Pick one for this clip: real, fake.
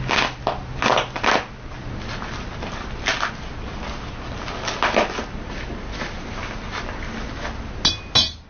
real